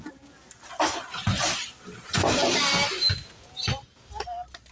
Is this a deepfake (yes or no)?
no